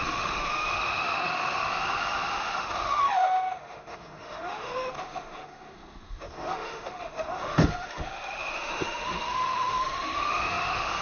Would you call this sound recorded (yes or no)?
no